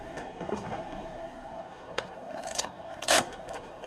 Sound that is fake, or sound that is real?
fake